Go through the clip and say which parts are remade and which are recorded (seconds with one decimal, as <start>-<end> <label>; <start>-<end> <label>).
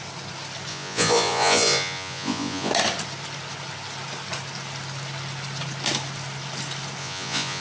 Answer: 0.0-0.7 recorded; 0.7-2.7 remade; 2.7-7.0 recorded; 7.0-7.6 remade